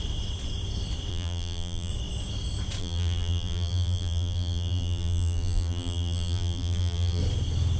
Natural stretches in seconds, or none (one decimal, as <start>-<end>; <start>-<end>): 0.0-1.1; 1.9-2.8; 7.2-7.8